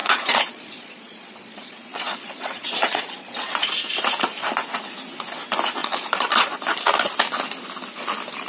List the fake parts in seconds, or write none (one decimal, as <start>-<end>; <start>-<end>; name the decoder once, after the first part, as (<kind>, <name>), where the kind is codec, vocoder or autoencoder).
0.0-3.7 (vocoder, Vocos); 5.8-6.6